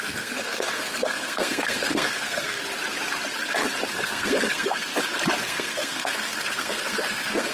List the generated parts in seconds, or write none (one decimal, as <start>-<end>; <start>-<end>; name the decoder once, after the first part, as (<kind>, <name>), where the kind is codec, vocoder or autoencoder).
0.0-2.6 (codec, SNAC); 3.9-4.9; 5.4-7.5